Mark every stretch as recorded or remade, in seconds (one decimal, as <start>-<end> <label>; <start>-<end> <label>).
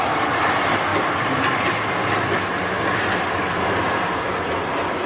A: 0.0-5.1 recorded